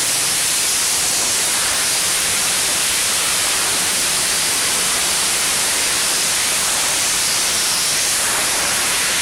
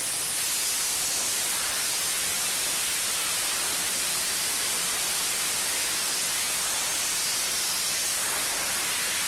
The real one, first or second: second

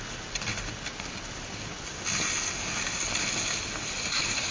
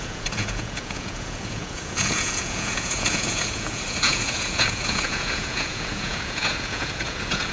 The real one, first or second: first